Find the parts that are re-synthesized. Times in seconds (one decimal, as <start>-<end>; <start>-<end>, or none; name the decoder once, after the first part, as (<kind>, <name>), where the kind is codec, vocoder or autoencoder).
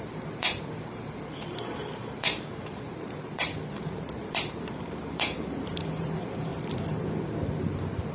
0.0-6.5 (vocoder, BigVGAN v2); 7.6-8.1